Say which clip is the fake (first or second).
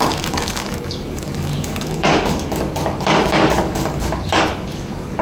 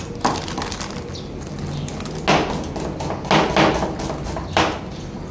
first